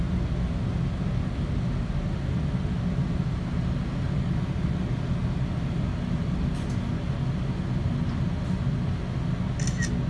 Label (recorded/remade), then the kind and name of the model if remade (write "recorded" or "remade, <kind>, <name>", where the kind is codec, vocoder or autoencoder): recorded